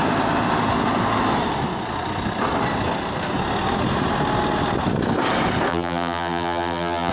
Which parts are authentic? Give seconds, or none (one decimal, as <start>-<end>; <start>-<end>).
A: 0.0-5.7